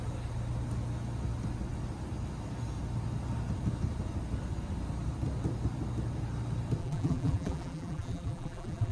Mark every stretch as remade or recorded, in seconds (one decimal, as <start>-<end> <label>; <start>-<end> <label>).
0.0-6.8 recorded; 6.8-8.9 remade